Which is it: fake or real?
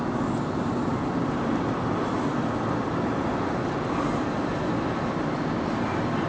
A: real